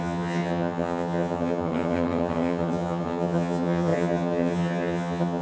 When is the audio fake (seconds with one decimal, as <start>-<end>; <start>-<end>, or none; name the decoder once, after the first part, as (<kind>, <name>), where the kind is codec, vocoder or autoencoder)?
0.0-5.4 (vocoder, HiFi-GAN)